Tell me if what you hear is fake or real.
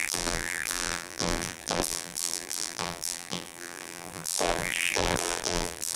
fake